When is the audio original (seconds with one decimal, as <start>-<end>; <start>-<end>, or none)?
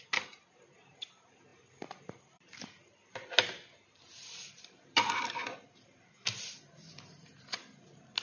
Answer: 0.0-8.2